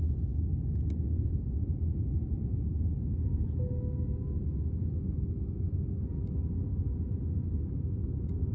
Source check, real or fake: real